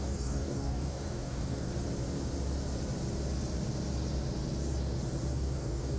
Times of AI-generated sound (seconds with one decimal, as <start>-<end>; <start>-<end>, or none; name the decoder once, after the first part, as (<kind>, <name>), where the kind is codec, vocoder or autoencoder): 0.0-1.7 (codec, DAC); 5.3-6.0

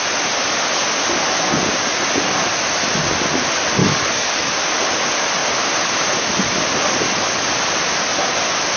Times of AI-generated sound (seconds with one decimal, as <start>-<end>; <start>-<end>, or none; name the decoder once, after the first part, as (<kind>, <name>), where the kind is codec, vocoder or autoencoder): 3.8-4.5 (codec, DAC)

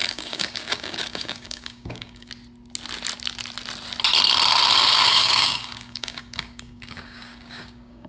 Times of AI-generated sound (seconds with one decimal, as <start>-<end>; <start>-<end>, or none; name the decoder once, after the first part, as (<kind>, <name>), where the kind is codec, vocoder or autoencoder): 0.0-2.3 (codec, DAC); 5.1-8.1

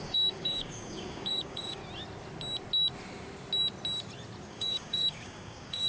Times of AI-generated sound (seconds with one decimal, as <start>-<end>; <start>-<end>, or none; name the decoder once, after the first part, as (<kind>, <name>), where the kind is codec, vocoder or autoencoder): 0.0-1.8 (codec, DAC); 4.5-5.9

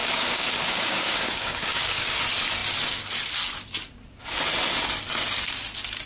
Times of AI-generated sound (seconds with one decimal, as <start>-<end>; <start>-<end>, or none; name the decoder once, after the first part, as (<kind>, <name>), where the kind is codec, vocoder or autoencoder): 0.0-2.2 (codec, DAC)

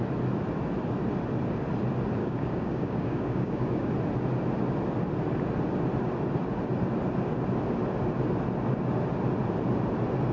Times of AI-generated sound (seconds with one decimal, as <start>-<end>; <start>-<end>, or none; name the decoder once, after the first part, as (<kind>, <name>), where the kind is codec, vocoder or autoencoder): 2.2-3.9 (codec, DAC)

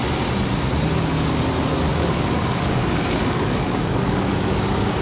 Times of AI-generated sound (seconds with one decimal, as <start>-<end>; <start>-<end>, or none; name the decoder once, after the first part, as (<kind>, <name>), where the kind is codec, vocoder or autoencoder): 1.9-5.0 (codec, DAC)

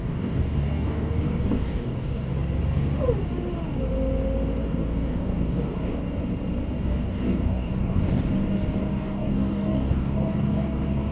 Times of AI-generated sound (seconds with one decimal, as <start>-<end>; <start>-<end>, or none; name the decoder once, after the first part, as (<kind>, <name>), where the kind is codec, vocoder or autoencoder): 0.0-2.3 (codec, DAC); 4.6-6.0; 6.8-8.0; 8.8-11.1